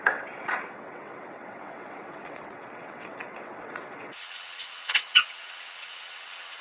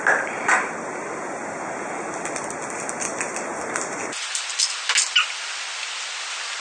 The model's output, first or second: first